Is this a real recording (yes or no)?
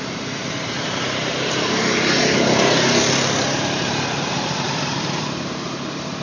no